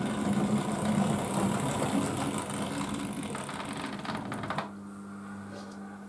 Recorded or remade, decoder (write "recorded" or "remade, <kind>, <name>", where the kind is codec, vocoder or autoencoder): recorded